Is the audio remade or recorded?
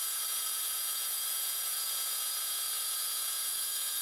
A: remade